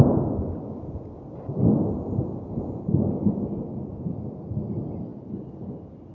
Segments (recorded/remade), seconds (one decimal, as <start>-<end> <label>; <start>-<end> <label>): 0.0-3.9 recorded; 3.9-4.4 remade; 4.4-5.1 recorded; 5.1-6.1 remade